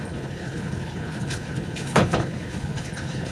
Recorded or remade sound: remade